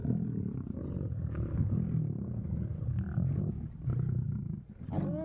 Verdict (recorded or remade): recorded